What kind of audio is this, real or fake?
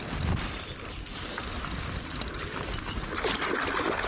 fake